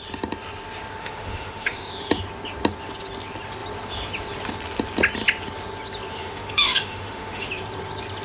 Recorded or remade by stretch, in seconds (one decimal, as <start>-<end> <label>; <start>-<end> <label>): 0.0-1.0 recorded; 1.0-1.9 remade; 1.9-6.1 recorded; 6.1-7.5 remade; 7.5-8.2 recorded